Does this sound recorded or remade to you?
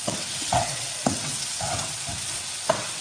remade